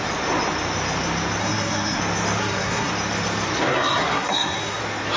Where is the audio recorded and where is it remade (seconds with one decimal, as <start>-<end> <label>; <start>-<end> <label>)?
0.0-1.4 recorded; 1.4-2.0 remade; 2.0-2.4 recorded; 2.4-2.9 remade; 2.9-3.7 recorded; 3.7-4.8 remade; 4.8-5.2 recorded